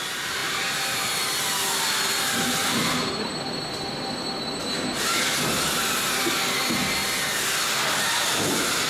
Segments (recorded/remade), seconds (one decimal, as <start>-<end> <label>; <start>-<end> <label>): 0.0-8.9 recorded

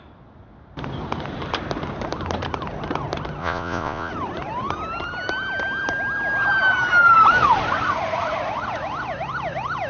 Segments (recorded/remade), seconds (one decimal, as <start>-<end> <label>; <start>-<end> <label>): 0.0-3.4 recorded; 3.4-4.1 remade; 4.1-9.9 recorded

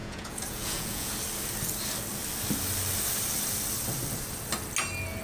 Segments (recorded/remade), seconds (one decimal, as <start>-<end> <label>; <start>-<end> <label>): 0.0-1.1 remade; 1.1-5.2 recorded

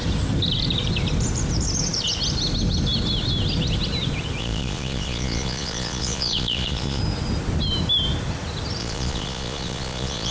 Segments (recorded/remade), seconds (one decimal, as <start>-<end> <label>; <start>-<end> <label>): 0.0-4.4 recorded; 4.4-7.0 remade; 7.0-8.8 recorded; 8.8-10.3 remade

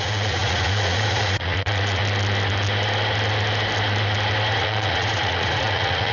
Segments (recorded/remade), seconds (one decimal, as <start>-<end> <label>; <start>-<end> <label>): 0.0-2.0 remade; 2.0-4.6 recorded; 4.6-6.1 remade

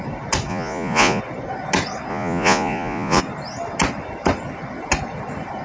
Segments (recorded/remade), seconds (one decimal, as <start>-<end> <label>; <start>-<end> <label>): 0.0-0.5 recorded; 0.5-1.2 remade; 1.2-2.1 recorded; 2.1-3.2 remade; 3.2-5.6 recorded